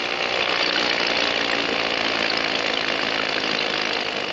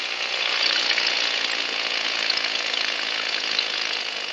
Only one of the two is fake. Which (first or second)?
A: second